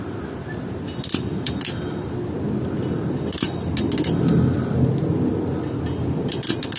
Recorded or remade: recorded